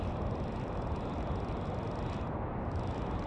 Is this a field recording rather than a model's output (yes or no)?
yes